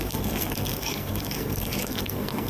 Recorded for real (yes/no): no